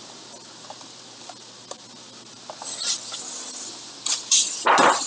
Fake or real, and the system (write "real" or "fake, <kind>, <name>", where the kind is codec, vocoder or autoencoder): real